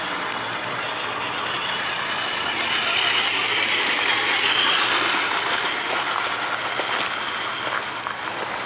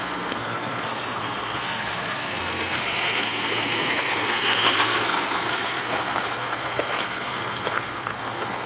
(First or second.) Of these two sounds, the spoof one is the second